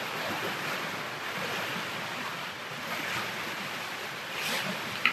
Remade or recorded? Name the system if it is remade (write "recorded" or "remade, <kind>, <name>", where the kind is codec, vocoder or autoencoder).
remade, vocoder, BigVGAN v2